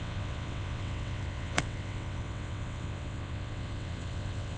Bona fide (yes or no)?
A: no